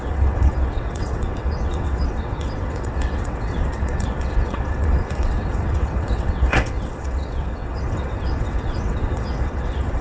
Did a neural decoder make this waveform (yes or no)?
yes